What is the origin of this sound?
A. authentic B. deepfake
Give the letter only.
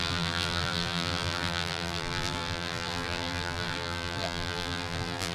B